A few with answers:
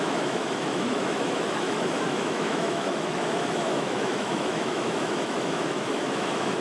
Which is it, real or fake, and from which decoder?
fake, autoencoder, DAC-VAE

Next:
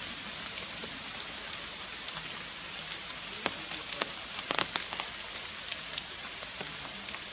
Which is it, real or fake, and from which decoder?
fake, vocoder, BigVGAN v2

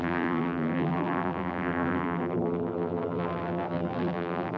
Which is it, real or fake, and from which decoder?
fake, vocoder, BigVGAN v2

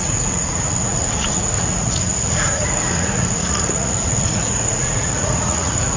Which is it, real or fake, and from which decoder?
fake, vocoder, Vocos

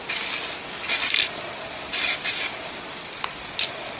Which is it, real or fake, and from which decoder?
real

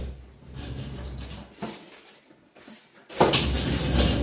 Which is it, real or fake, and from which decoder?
real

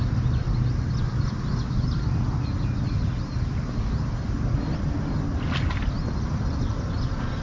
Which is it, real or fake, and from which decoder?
real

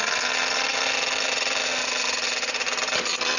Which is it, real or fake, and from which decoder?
real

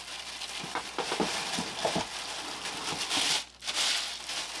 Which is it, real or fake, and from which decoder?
real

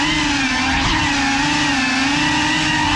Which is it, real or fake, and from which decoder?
real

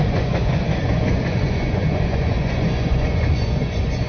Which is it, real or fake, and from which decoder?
fake, vocoder, Vocos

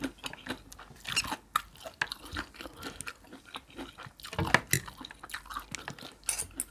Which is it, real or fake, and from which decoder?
real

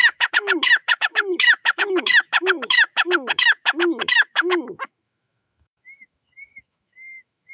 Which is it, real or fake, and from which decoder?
fake, autoencoder, DAC-VAE